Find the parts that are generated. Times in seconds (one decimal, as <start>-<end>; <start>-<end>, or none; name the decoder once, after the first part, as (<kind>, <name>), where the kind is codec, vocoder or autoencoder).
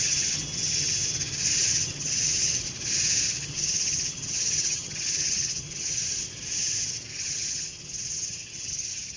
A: 0.0-1.0 (vocoder, HiFi-GAN); 1.6-2.4; 3.3-6.0; 7.1-9.2